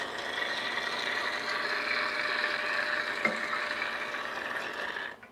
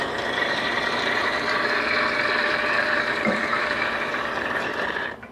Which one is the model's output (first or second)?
second